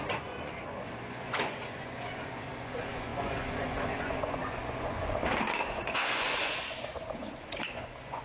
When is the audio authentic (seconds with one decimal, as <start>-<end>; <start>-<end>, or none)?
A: none